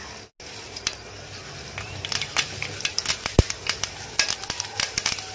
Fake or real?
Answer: real